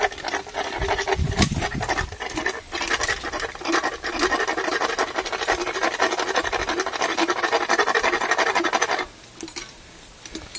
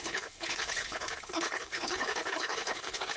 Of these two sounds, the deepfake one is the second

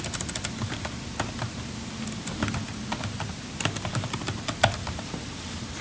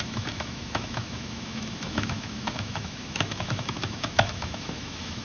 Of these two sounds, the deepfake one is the second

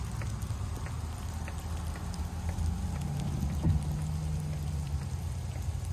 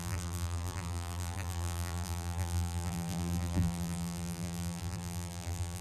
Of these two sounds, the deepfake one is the second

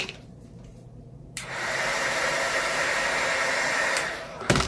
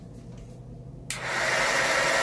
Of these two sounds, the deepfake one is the first